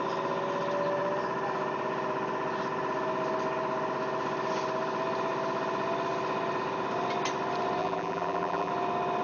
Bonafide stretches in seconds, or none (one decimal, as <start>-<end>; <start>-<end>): 0.0-7.8; 8.7-9.2